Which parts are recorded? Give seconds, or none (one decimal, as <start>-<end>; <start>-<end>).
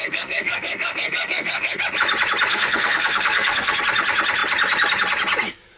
1.8-2.5; 3.8-5.8